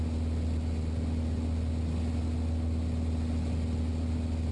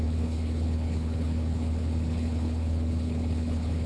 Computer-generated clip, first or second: second